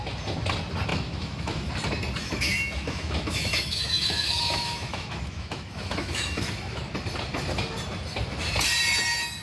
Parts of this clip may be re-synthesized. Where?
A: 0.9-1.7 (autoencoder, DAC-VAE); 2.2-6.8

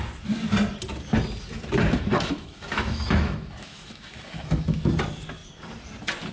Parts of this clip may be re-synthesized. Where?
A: 1.8-4.9 (autoencoder, DAC-VAE)

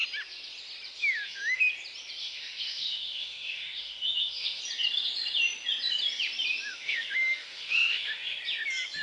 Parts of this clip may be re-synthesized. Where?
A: 1.0-1.6 (autoencoder, DAC-VAE); 2.2-4.6; 6.7-8.4

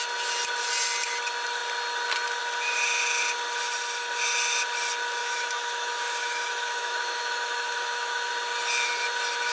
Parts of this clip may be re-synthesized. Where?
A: 5.2-8.3 (autoencoder, DAC-VAE)